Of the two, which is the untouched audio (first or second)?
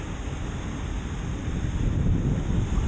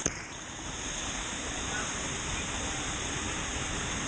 first